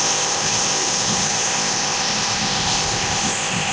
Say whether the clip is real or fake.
fake